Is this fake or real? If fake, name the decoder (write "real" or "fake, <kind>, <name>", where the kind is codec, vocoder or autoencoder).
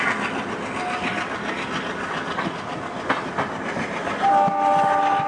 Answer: real